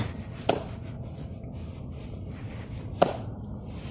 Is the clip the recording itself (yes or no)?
yes